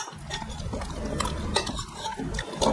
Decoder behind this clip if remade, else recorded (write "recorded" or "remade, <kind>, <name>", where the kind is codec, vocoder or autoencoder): recorded